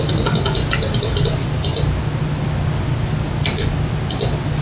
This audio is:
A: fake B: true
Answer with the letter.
B